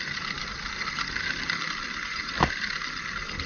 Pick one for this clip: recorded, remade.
recorded